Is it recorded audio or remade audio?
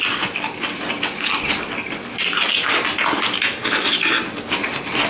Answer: recorded